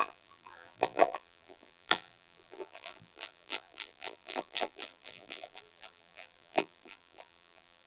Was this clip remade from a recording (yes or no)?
yes